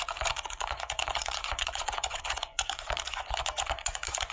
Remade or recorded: remade